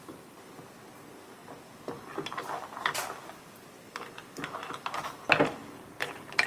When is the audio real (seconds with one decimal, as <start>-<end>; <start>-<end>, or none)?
0.0-6.5